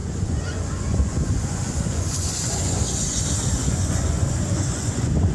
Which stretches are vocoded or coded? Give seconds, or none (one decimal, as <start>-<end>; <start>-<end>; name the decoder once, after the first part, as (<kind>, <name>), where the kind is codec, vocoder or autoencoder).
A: 0.0-3.2 (vocoder, Vocos); 3.6-5.3